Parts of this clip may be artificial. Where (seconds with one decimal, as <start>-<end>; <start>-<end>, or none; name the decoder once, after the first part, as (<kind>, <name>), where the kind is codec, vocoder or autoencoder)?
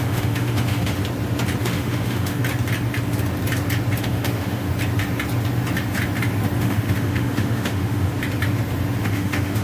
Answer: 0.0-1.0 (autoencoder, DAC-VAE); 1.6-2.4; 4.0-4.7; 6.6-8.1; 9.0-9.6